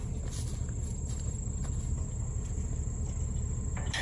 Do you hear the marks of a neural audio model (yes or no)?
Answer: no